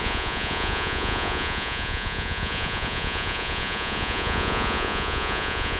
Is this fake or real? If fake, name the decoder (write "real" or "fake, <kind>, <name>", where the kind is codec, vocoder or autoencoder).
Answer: fake, vocoder, Vocos